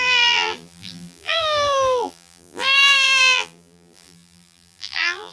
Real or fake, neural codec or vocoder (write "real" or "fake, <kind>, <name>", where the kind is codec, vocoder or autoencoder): fake, vocoder, BigVGAN v2